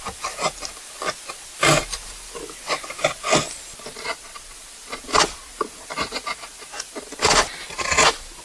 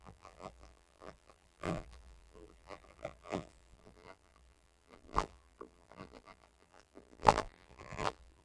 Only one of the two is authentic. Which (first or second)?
first